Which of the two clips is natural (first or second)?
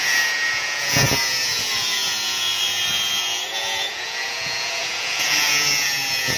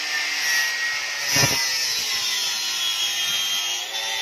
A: second